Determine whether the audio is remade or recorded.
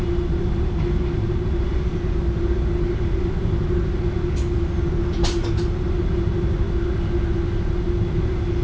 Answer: recorded